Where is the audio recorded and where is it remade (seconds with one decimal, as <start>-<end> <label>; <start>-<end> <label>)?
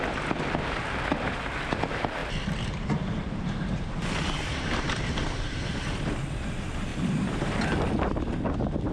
0.0-2.2 recorded; 2.2-6.0 remade; 6.0-6.9 recorded; 6.9-7.9 remade; 7.9-8.9 recorded